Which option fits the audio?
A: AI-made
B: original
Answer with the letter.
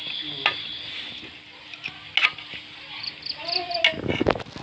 B